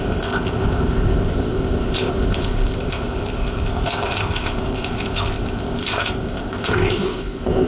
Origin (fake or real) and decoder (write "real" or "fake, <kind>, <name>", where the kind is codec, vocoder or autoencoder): fake, codec, ZipCodec